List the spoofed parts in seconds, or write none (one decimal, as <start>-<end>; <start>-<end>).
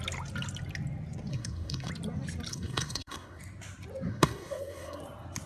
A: 1.3-1.9; 2.5-3.4; 4.1-5.0